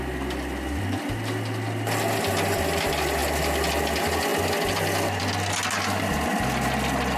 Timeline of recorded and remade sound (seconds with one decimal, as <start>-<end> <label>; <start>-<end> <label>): 0.0-7.2 recorded